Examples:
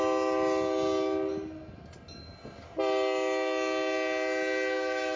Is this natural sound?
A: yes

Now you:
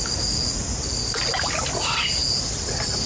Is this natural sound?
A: yes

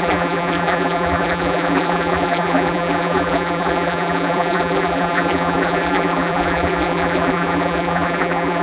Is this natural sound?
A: no